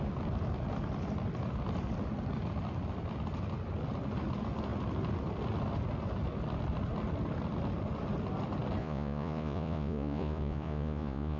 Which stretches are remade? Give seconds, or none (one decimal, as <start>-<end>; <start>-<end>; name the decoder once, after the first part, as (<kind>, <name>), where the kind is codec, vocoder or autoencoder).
8.8-11.4 (vocoder, Vocos)